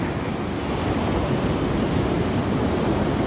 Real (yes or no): yes